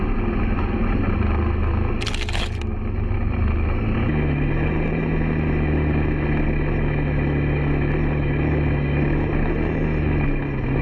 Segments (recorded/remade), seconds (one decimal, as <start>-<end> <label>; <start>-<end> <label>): 0.0-10.8 recorded